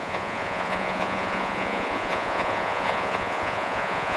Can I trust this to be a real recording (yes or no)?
no